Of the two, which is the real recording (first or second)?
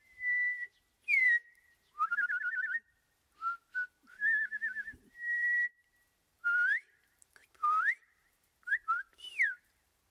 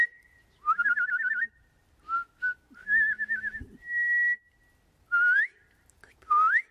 second